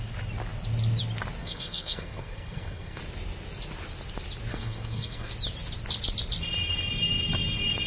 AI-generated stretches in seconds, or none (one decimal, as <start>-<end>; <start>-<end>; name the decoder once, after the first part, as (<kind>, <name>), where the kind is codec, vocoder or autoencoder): 1.4-3.0 (codec, SNAC); 4.5-5.3

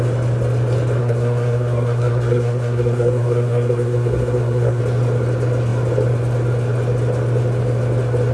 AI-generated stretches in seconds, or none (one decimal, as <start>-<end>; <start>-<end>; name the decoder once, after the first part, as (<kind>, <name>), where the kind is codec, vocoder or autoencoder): 1.0-4.8 (codec, SNAC)

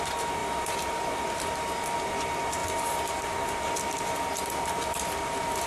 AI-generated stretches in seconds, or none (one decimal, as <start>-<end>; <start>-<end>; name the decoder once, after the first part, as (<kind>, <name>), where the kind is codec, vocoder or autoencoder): none